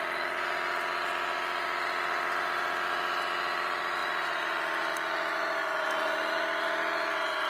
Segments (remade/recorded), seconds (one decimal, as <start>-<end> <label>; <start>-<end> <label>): 0.0-7.5 recorded